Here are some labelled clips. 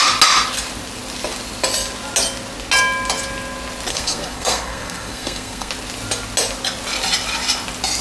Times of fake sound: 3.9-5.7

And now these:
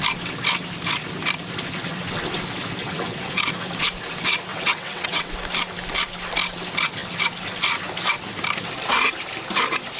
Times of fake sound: 2.8-3.3; 4.5-5.3

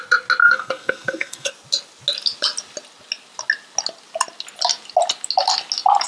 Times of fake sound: 0.4-1.5

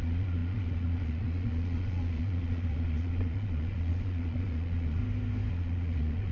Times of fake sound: 0.0-5.0; 5.5-6.3

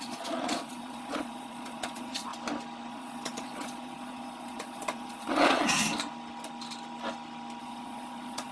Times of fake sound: 0.0-2.3; 2.9-5.8; 7.6-8.5